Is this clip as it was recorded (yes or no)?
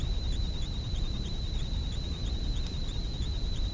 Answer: no